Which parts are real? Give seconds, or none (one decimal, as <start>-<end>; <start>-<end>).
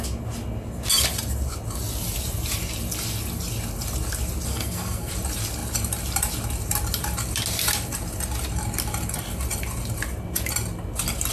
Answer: 0.0-4.5; 5.1-11.3